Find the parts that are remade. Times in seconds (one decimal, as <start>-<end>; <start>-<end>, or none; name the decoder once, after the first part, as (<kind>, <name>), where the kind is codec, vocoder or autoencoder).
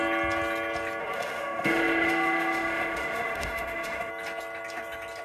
1.0-4.1 (autoencoder, DAC-VAE)